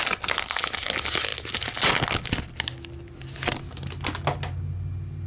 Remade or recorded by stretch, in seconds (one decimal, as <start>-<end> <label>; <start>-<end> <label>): 0.0-5.3 recorded